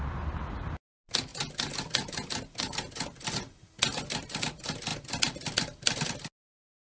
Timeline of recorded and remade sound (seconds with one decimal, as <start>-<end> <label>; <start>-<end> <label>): 0.0-6.9 recorded